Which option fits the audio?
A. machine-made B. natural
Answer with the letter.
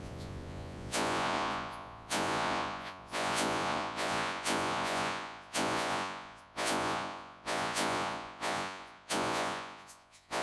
A